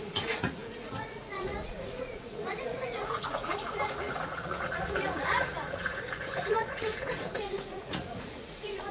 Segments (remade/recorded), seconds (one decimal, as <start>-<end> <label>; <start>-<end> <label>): 0.0-8.9 remade